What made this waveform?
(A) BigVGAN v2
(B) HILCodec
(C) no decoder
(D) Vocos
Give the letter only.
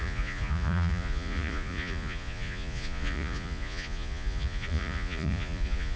D